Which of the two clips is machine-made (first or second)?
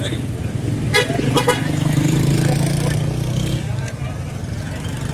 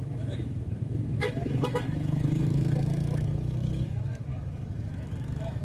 second